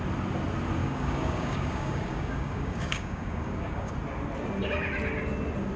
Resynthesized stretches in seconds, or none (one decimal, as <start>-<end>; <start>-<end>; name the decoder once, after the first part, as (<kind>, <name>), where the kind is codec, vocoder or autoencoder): 0.8-3.9 (codec, DAC)